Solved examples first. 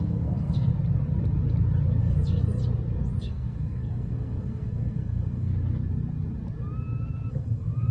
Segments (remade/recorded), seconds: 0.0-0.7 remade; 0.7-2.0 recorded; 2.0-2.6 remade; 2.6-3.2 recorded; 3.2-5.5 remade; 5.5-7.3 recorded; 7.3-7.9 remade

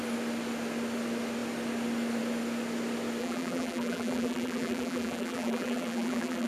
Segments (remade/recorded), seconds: 0.0-3.2 recorded; 3.2-6.5 remade